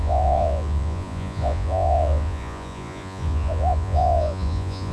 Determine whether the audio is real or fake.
fake